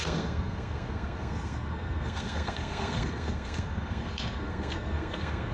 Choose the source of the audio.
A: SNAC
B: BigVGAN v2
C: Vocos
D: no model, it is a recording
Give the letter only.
A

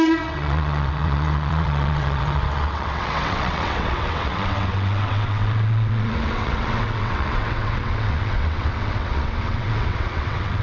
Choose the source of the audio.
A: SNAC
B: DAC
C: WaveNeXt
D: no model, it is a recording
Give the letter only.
C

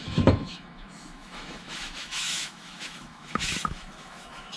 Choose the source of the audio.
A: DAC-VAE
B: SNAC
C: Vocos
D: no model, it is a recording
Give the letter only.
A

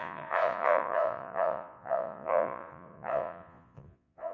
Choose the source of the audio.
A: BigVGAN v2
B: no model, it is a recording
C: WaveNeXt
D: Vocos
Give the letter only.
D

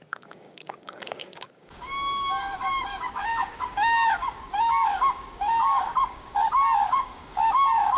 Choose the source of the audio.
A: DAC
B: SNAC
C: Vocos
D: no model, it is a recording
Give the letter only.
A